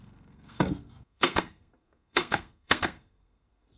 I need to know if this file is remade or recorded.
remade